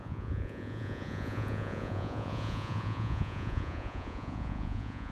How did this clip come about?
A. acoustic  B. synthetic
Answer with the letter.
B